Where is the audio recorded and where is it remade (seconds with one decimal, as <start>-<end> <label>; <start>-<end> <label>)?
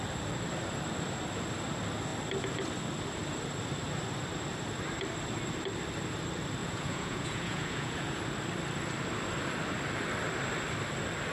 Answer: 0.0-6.6 recorded; 6.6-8.2 remade; 8.2-11.3 recorded